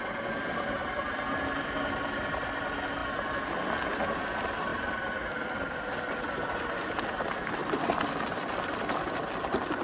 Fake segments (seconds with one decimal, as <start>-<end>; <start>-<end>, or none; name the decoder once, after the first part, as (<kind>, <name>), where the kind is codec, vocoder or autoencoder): 4.7-5.8 (vocoder, BigVGAN v2)